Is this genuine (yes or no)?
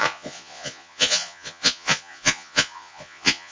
no